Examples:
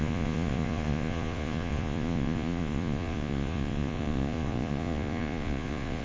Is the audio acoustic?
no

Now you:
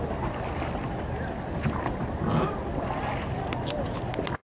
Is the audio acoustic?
yes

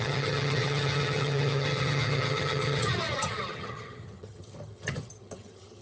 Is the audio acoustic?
no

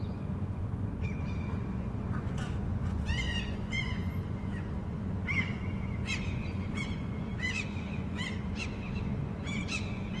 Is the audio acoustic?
no